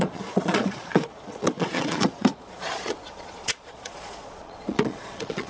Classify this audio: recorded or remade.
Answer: remade